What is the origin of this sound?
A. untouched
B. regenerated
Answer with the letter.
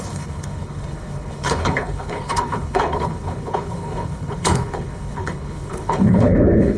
B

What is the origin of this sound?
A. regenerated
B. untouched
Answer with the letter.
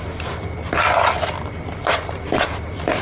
B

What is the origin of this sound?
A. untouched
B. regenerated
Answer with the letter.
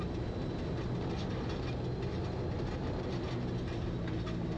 A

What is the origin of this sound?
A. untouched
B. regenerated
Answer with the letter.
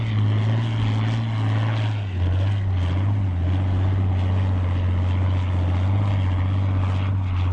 A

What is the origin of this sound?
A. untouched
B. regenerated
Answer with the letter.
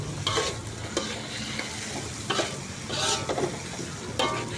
A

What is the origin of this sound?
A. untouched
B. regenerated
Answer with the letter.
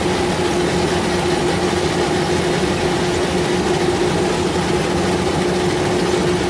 A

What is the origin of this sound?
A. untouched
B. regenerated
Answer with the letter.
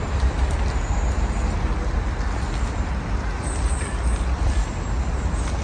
A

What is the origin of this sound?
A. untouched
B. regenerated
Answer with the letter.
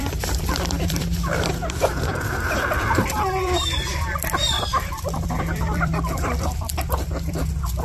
B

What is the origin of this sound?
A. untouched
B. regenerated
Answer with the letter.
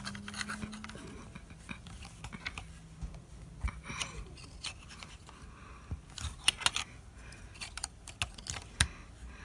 A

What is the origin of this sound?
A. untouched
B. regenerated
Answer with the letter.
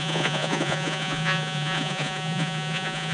B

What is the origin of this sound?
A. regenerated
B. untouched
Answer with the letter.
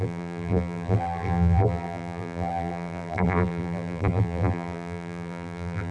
A